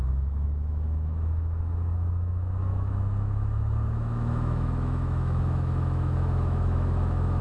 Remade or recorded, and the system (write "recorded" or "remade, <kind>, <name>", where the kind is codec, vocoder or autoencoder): remade, autoencoder, DAC-VAE